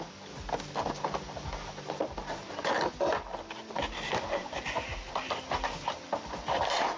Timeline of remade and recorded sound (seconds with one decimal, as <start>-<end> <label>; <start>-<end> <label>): 0.0-7.0 recorded